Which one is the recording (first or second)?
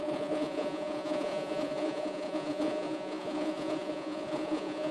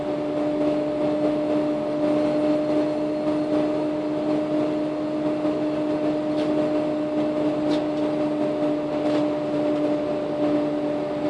second